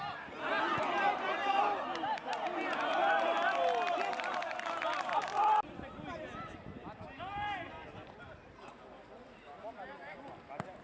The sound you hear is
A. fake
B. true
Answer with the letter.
B